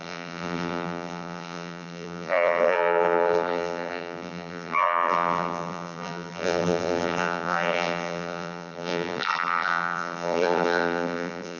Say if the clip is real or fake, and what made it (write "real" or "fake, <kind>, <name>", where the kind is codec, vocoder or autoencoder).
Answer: fake, vocoder, BigVGAN v2